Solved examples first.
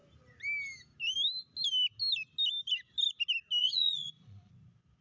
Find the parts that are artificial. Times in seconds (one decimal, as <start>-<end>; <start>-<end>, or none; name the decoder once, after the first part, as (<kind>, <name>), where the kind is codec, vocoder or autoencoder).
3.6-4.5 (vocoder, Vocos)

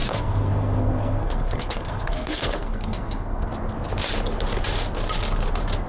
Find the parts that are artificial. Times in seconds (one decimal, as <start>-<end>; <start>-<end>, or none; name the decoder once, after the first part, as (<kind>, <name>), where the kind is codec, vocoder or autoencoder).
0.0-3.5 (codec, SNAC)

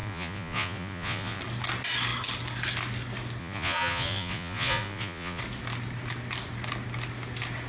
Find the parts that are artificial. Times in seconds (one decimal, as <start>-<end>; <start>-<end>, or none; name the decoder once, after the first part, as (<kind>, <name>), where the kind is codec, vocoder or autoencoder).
0.0-1.4 (vocoder, Vocos); 3.4-5.4